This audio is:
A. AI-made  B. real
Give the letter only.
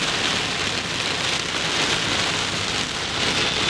B